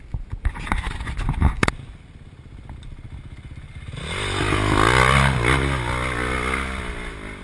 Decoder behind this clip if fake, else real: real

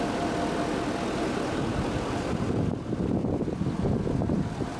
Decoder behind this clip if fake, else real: real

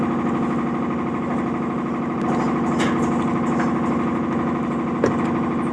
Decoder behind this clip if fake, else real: real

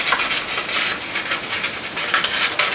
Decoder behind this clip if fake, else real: real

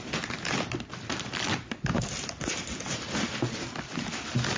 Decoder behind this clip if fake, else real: real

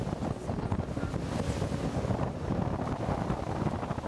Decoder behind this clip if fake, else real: real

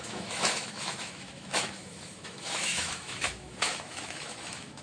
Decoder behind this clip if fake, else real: fake, autoencoder, DAC-VAE